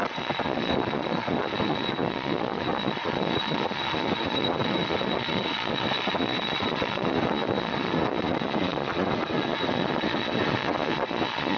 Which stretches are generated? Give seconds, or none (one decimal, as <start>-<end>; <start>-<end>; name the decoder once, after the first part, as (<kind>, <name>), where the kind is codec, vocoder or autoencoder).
0.0-11.6 (vocoder, Vocos)